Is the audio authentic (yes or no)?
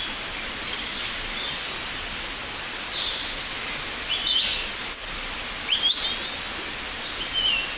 yes